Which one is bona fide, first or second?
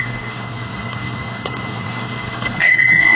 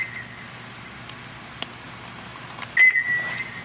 second